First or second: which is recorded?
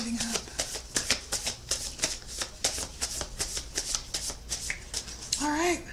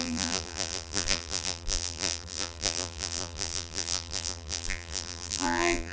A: first